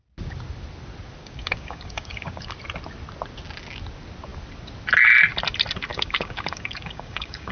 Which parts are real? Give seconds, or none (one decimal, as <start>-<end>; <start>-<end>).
0.0-1.2; 2.5-5.9